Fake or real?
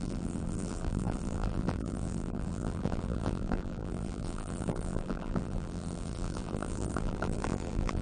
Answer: fake